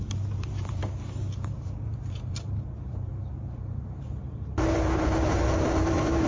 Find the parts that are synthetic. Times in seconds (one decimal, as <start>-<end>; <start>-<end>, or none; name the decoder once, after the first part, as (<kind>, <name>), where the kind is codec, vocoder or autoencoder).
0.0-6.3 (vocoder, BigVGAN v2)